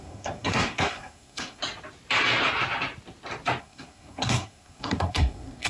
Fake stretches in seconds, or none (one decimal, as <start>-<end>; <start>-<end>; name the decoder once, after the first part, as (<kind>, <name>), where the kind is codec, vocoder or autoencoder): 0.0-1.6 (codec, SNAC); 3.6-5.7